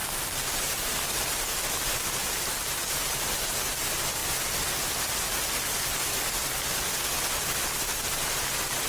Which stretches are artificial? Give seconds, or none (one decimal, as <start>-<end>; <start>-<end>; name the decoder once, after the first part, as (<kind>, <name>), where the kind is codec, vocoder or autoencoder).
0.0-0.9 (vocoder, BigVGAN v2)